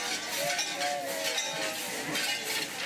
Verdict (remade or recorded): recorded